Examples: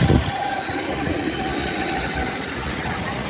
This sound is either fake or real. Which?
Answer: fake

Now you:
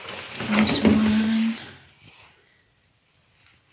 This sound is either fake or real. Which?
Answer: real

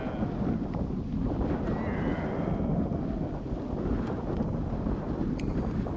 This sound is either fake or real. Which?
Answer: real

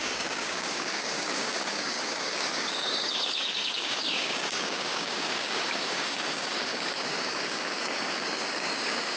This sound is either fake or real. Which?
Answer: fake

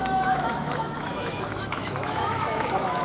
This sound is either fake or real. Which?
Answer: fake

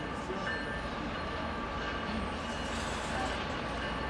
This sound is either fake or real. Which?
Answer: real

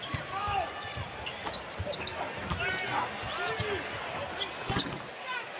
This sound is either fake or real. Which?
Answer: real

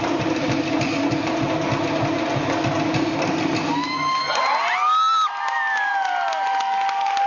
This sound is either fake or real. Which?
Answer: real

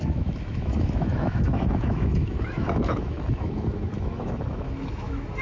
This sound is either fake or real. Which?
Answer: fake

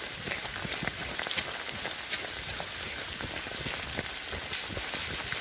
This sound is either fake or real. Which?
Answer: real